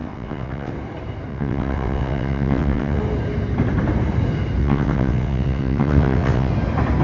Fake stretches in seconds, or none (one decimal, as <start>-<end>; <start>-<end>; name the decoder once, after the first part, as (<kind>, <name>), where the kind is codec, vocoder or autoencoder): 0.0-0.7 (vocoder, WaveNeXt); 1.3-3.0; 4.6-6.5

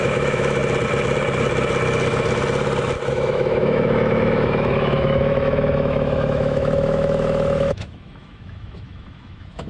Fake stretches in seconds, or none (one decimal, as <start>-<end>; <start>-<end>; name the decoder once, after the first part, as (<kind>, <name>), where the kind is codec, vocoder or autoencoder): 0.0-0.6 (autoencoder, DAC-VAE); 3.1-9.7

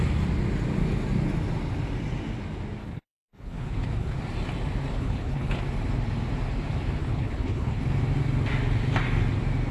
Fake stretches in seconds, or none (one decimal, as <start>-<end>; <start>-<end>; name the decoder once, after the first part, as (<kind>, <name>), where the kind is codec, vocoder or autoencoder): 2.8-4.2 (codec, HILCodec); 4.9-5.6; 7.0-7.8

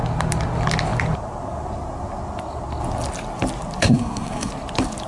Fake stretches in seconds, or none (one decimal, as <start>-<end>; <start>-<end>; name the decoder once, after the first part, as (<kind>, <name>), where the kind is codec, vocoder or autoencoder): 3.8-4.5 (codec, SNAC)

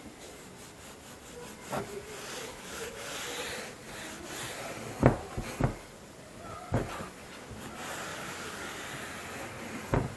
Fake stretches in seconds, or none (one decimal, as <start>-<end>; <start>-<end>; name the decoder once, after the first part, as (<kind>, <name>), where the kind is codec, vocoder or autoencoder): 2.5-3.1 (codec, DAC); 8.1-8.7

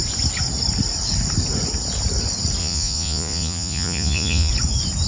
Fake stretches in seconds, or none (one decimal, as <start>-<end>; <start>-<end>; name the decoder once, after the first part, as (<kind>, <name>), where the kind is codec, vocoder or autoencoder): 2.6-4.5 (vocoder, Vocos)